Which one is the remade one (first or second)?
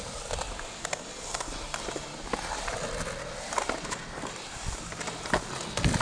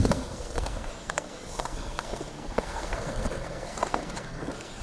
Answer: second